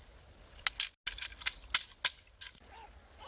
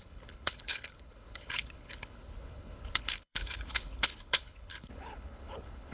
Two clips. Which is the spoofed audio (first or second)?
second